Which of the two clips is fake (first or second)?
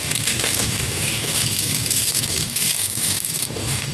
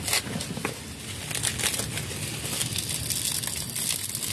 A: first